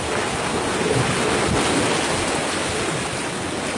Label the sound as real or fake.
real